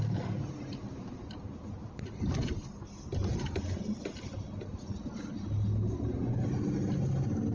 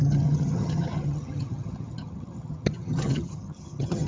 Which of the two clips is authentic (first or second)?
first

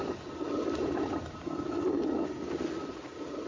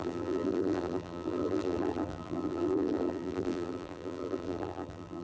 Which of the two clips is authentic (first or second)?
first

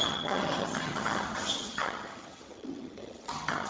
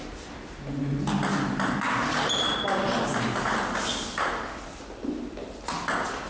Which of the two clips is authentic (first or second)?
second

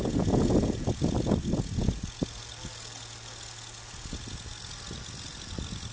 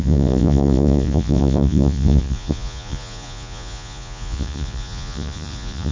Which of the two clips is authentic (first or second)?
first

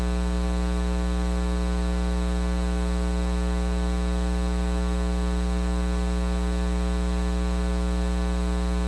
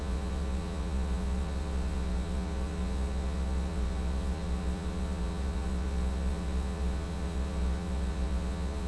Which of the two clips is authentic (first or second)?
first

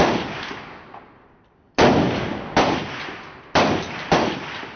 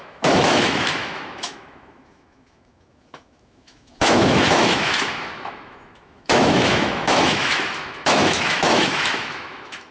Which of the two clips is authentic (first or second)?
first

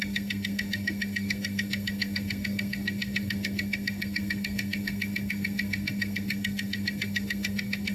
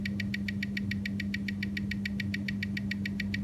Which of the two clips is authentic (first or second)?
second